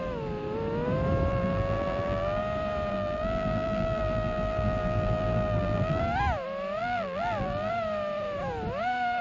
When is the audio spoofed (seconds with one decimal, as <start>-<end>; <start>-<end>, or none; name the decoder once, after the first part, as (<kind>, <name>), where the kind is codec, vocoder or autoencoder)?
1.3-2.4 (vocoder, BigVGAN v2); 2.9-6.0; 6.8-7.7